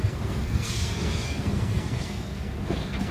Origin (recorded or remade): remade